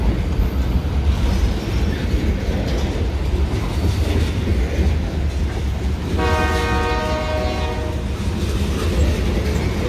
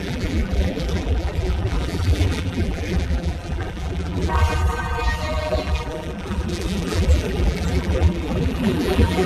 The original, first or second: first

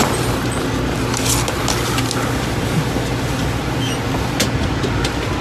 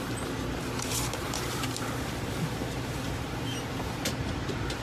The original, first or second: first